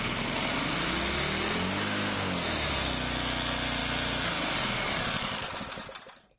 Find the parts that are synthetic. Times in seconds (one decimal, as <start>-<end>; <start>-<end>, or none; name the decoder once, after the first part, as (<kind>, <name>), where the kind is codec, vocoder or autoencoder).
none